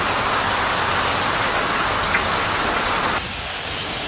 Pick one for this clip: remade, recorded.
recorded